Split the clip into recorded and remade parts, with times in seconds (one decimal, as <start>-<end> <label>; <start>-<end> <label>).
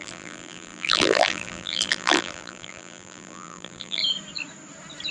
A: 0.0-4.0 remade; 4.0-5.1 recorded